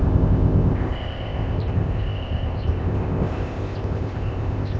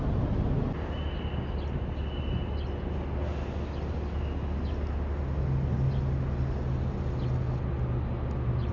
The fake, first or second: first